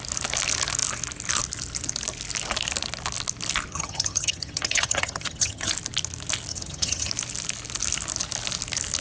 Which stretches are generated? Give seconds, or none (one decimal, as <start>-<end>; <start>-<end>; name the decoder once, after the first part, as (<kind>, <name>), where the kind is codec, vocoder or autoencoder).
3.7-5.7 (vocoder, HiFi-GAN); 6.5-7.1